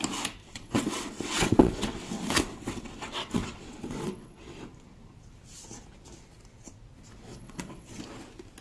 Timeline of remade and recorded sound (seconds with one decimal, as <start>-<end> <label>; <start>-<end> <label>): 0.0-0.4 recorded; 0.4-4.6 remade; 4.6-7.3 recorded; 7.3-8.0 remade; 8.0-8.6 recorded